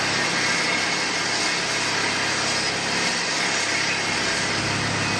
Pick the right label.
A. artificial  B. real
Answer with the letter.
B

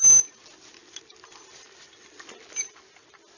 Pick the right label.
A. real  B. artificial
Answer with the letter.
A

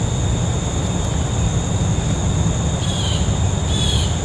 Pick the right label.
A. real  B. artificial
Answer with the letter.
A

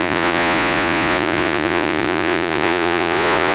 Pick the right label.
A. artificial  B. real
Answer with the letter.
A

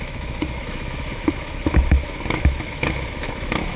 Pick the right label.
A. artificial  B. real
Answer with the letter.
A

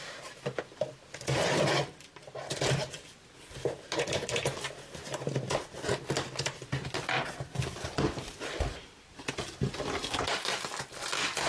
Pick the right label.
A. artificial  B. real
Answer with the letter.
B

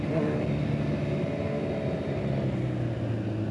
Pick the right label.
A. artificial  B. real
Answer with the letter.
B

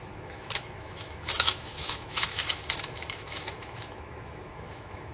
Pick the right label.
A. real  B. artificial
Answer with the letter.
B